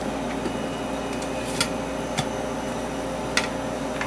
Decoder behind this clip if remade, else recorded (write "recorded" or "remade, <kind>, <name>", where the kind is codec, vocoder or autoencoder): recorded